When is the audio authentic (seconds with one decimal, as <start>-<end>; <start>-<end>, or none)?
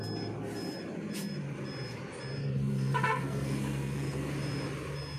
0.0-2.4; 4.3-5.2